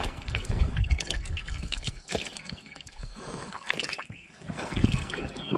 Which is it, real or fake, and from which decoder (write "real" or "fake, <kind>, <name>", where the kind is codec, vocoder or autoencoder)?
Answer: fake, codec, SNAC